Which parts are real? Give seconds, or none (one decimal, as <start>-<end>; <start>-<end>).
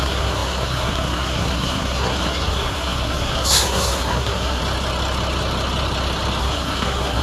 4.6-6.4